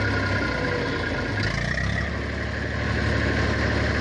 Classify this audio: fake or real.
real